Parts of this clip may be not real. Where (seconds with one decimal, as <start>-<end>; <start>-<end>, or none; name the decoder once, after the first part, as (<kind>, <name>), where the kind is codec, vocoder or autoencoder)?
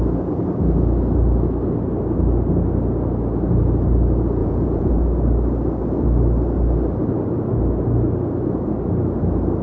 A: 4.4-5.0 (vocoder, Vocos)